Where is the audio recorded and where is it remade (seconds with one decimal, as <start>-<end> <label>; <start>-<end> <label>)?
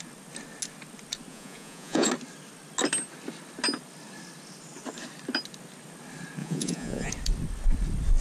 0.0-1.3 recorded; 1.3-2.1 remade; 2.1-6.4 recorded; 6.4-7.1 remade; 7.1-8.2 recorded